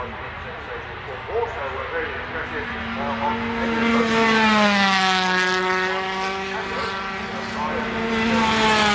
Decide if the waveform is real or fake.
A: real